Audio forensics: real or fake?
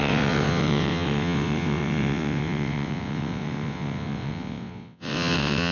fake